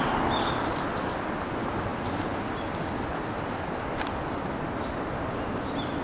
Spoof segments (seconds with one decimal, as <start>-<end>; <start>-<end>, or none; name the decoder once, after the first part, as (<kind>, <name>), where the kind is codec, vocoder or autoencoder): none